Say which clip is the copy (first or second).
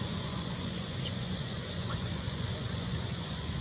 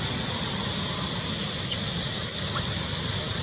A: first